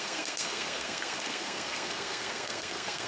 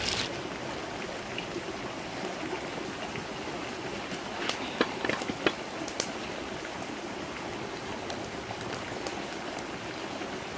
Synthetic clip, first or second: first